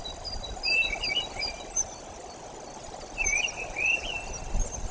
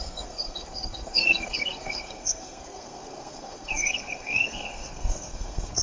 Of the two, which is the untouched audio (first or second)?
first